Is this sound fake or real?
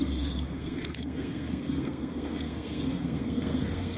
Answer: fake